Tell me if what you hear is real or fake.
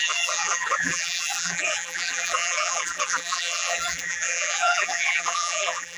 fake